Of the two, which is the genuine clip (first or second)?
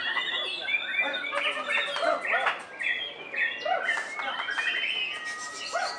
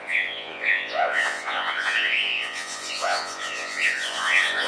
first